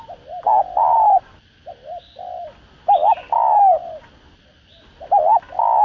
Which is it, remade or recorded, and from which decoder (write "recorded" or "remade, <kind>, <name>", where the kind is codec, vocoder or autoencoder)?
recorded